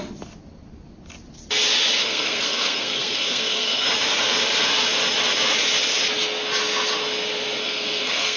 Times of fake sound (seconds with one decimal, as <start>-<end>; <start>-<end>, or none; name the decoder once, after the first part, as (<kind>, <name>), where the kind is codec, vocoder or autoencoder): 2.0-3.9 (codec, SNAC); 7.6-8.4